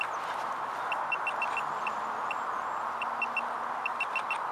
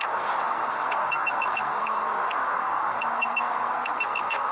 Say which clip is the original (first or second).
first